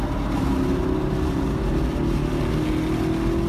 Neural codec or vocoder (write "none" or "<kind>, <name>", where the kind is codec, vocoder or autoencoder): none